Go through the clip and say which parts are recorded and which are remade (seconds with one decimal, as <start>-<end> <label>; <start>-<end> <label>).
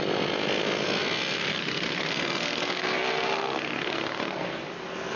0.0-1.5 recorded; 1.5-4.6 remade; 4.6-5.2 recorded